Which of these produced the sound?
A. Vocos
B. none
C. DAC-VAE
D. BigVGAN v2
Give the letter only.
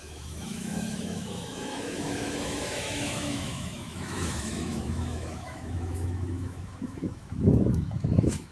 C